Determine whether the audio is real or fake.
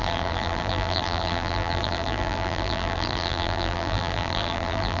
fake